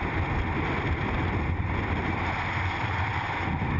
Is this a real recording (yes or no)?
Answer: yes